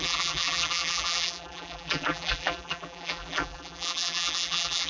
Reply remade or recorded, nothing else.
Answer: remade